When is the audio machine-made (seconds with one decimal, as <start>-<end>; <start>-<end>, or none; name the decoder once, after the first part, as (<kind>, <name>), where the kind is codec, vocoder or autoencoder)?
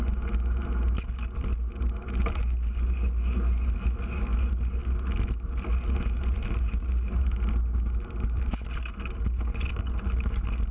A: none